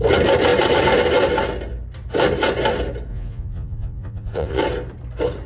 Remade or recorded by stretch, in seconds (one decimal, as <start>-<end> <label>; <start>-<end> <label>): 0.0-3.1 recorded; 3.1-4.6 remade; 4.6-5.5 recorded